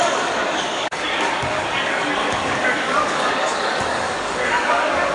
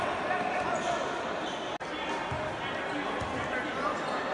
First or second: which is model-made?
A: first